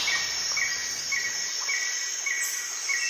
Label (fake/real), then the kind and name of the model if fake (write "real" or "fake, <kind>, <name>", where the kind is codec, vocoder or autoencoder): real